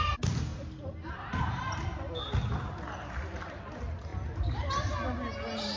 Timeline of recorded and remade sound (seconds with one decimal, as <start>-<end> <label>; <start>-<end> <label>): 0.0-5.8 recorded